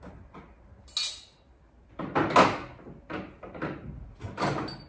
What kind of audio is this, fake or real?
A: real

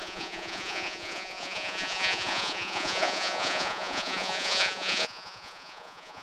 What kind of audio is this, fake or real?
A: fake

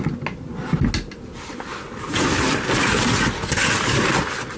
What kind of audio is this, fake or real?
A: real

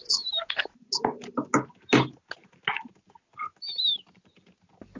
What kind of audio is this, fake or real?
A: real